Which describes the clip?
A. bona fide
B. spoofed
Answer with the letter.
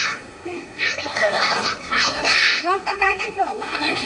B